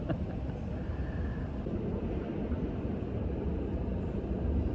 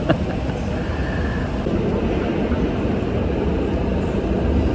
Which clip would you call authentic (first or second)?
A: second